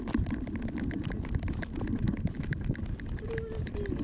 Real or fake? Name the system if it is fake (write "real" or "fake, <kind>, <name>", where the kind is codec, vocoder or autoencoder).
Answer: real